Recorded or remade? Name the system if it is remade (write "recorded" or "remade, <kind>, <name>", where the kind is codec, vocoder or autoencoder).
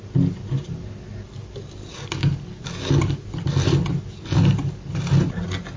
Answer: recorded